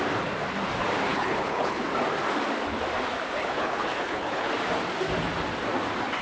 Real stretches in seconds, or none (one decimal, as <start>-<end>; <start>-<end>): 0.0-1.1; 1.8-3.4; 4.5-6.2

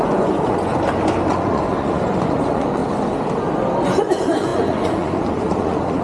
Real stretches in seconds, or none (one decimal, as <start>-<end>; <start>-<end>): 0.7-1.3; 2.8-3.8

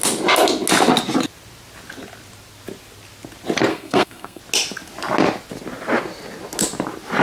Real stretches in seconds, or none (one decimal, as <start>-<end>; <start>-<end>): 0.0-3.7; 4.4-7.2